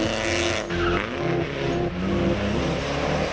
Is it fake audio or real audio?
real